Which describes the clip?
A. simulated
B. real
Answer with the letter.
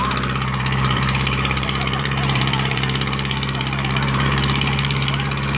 A